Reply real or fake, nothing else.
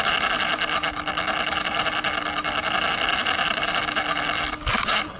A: real